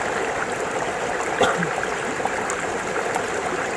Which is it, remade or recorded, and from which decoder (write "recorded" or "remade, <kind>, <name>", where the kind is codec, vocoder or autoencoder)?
recorded